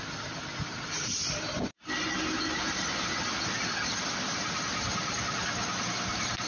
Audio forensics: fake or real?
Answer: real